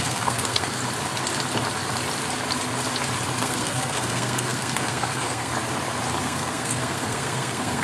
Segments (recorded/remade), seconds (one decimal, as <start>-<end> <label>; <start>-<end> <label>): 0.0-0.8 remade; 0.8-3.4 recorded; 3.4-5.5 remade; 5.5-6.2 recorded; 6.2-7.8 remade